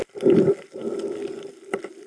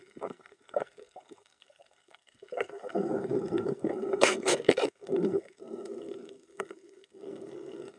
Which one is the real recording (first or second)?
first